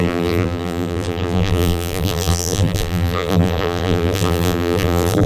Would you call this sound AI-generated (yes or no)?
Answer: yes